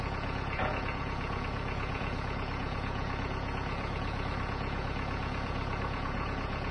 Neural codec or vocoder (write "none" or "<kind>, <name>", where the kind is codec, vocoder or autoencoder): vocoder, Vocos